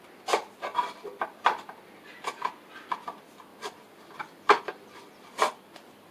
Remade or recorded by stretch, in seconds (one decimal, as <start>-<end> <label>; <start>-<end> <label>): 0.0-3.5 recorded; 3.5-6.1 remade